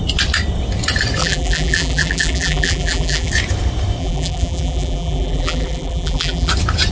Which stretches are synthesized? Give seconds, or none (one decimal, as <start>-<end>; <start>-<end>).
1.2-3.3; 4.0-6.5